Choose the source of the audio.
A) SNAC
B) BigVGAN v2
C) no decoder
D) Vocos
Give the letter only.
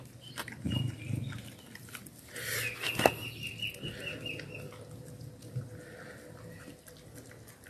C